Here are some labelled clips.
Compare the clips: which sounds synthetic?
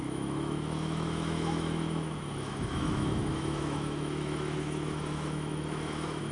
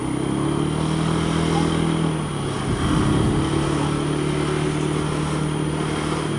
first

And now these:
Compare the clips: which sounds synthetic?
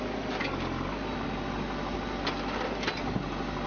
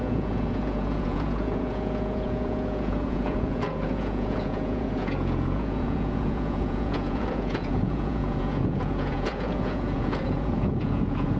second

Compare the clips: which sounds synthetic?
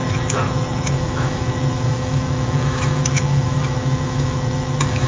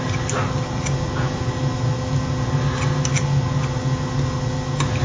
first